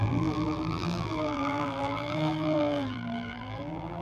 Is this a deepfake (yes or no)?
yes